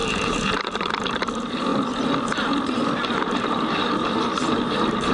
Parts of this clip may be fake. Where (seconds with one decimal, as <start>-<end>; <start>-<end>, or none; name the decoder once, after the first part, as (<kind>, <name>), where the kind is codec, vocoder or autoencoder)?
0.0-1.7 (vocoder, BigVGAN v2); 3.2-5.1